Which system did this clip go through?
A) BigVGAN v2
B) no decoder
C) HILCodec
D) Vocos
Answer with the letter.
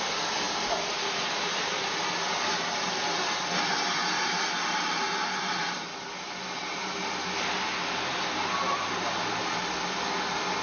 B